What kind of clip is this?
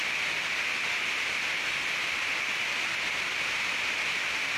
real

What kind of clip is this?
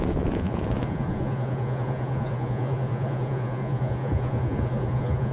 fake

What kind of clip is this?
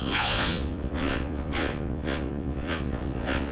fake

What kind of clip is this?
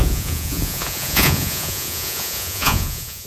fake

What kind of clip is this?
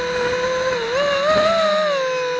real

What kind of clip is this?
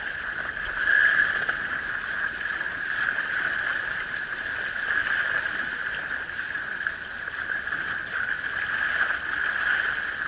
real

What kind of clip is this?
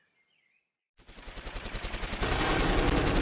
real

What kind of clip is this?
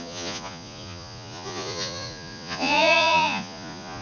fake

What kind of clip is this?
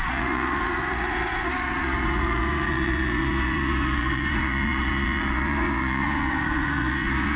fake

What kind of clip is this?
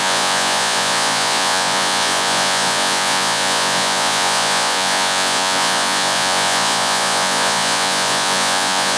fake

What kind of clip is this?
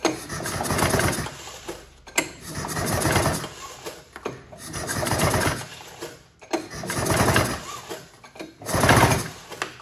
real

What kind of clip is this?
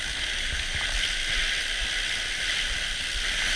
real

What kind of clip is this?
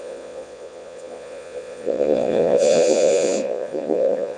fake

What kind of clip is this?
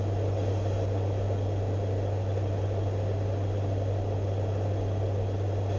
real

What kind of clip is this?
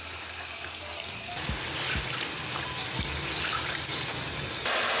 real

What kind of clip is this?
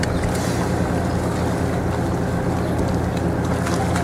real